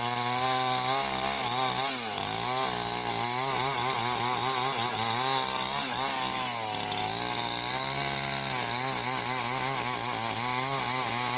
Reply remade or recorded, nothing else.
recorded